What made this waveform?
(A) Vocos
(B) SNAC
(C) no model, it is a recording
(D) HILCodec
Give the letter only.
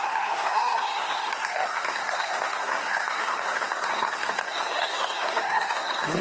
B